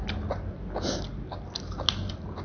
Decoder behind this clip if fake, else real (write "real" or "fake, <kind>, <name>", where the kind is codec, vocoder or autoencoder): real